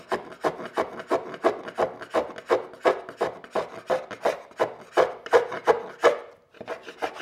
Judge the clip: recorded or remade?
recorded